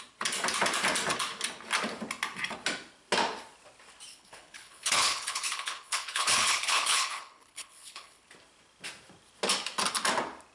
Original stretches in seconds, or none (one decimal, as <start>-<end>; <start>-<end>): 0.0-4.1; 8.3-10.5